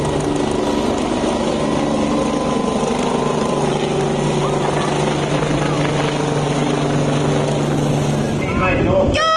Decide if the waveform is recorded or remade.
recorded